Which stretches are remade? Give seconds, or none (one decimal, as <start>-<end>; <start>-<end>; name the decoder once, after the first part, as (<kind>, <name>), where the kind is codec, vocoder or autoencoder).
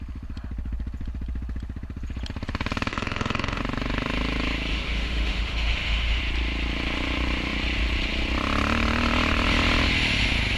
2.9-3.6 (autoencoder, DAC-VAE); 4.7-6.2